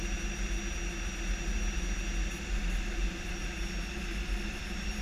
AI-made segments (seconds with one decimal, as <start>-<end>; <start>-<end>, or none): none

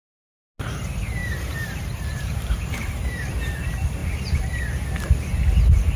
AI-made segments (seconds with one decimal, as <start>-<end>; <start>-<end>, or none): 1.2-3.3; 4.0-4.6

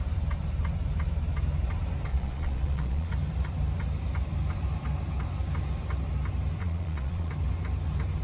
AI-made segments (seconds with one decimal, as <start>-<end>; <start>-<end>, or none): 2.1-3.1; 6.6-7.3

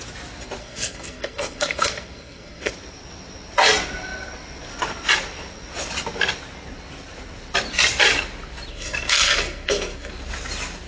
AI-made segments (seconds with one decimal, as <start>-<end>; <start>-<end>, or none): 0.6-2.7; 8.7-10.1

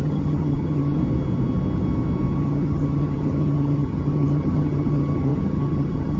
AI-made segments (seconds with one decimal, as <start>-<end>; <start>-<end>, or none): 0.0-1.0; 2.3-6.2

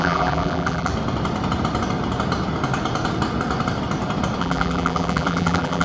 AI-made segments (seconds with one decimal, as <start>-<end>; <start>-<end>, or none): 0.0-0.9; 4.4-5.8